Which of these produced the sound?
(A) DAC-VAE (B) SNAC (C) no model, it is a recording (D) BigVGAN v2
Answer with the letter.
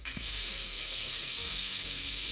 B